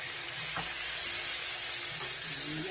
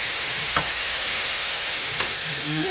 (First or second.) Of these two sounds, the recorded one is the first